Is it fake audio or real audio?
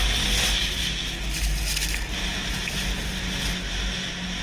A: real